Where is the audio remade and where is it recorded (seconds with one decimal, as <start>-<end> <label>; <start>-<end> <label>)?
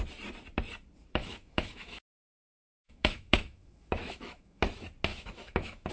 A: 0.0-1.2 recorded; 1.2-4.6 remade; 4.6-5.1 recorded; 5.1-5.9 remade